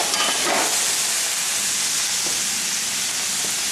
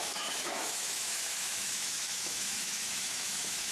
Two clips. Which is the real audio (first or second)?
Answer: first